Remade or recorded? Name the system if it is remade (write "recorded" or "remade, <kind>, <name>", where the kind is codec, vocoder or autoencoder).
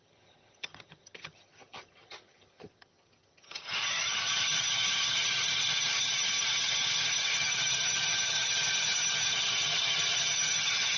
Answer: remade, vocoder, HiFi-GAN